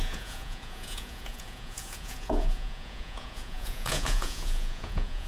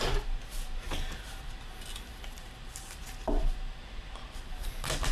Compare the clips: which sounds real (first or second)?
second